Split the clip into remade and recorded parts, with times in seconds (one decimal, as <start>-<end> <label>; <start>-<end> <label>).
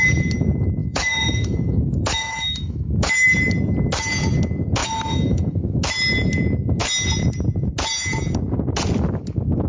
0.0-0.8 recorded; 0.8-3.1 remade; 3.1-4.8 recorded; 4.8-5.8 remade; 5.8-9.7 recorded